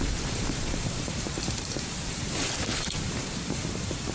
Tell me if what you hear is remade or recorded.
remade